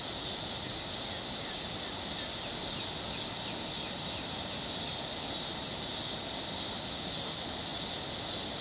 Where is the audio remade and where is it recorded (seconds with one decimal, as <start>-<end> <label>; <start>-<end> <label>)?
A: 0.0-8.6 recorded